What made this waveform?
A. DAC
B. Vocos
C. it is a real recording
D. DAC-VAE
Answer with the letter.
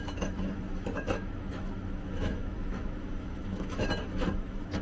D